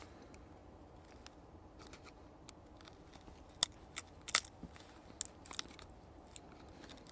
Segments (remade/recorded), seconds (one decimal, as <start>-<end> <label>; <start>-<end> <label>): 0.0-7.1 recorded